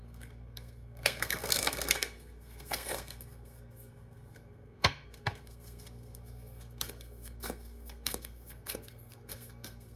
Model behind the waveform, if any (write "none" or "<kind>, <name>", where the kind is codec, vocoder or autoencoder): codec, SNAC